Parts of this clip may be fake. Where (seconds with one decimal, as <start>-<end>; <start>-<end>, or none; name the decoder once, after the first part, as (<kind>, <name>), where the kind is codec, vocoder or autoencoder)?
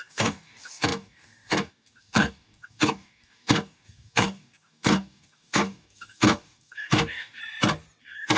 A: 0.0-7.4 (codec, DAC); 8.0-8.4